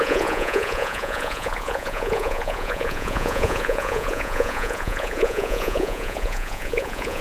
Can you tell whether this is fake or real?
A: fake